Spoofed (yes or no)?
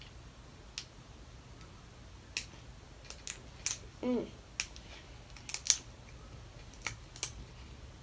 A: no